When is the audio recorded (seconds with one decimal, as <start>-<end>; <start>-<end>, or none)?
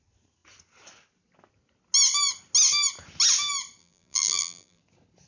0.0-3.8; 4.8-5.3